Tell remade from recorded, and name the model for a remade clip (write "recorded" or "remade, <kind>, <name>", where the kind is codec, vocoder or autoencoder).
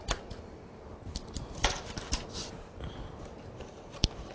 remade, vocoder, BigVGAN v2